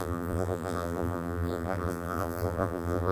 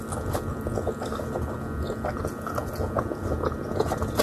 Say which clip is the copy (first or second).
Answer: first